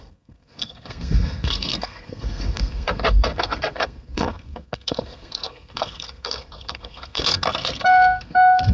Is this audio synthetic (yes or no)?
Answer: yes